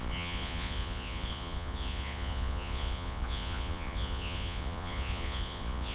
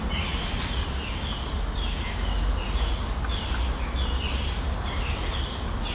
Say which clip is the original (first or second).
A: second